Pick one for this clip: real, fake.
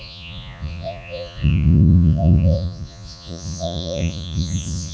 fake